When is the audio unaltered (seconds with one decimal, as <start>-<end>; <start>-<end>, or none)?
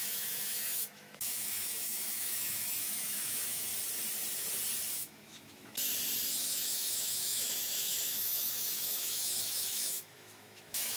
3.7-4.9; 5.9-6.4